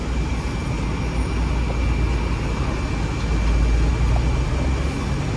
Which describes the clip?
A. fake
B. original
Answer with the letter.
B